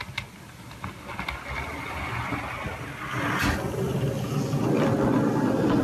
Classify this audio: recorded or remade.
recorded